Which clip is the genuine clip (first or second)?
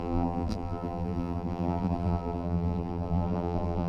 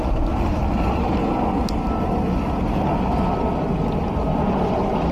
second